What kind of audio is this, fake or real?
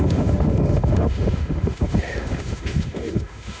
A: fake